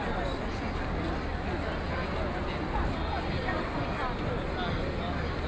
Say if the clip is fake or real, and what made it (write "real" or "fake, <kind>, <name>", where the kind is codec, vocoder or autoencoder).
real